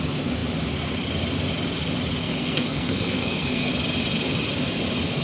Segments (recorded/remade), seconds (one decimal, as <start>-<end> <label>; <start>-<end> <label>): 0.0-2.2 recorded; 2.2-3.7 remade; 3.7-5.2 recorded